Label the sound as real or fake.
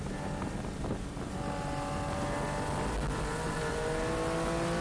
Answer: real